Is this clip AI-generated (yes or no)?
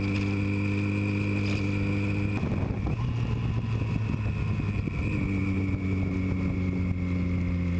no